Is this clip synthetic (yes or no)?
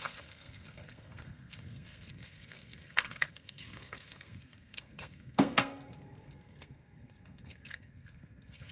yes